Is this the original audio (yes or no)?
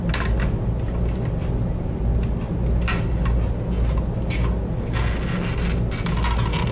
yes